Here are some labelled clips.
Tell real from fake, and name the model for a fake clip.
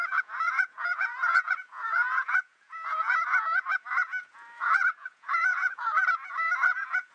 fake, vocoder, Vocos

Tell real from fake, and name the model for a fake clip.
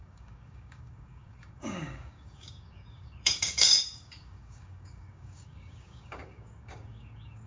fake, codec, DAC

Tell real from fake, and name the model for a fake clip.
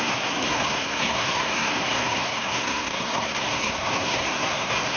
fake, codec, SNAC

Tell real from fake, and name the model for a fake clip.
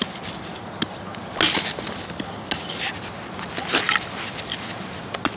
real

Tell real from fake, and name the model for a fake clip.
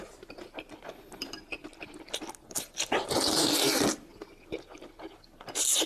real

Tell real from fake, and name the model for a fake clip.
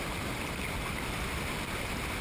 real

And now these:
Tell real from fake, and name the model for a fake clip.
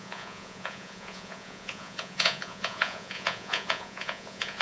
fake, vocoder, Vocos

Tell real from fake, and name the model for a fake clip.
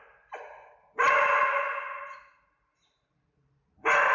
real